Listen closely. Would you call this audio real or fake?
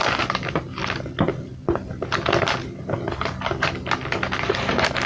real